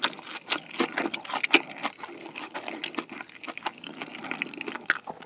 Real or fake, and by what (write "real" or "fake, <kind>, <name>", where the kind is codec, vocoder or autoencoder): real